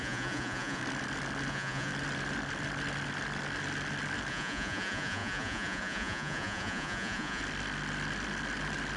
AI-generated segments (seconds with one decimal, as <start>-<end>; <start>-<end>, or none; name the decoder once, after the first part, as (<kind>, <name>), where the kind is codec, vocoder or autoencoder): 0.0-0.8 (vocoder, Vocos); 1.5-1.9; 4.3-7.4